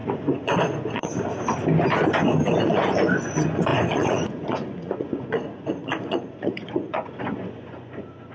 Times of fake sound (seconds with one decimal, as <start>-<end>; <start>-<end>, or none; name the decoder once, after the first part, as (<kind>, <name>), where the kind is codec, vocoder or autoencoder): 0.0-1.1 (vocoder, Vocos); 2.5-8.3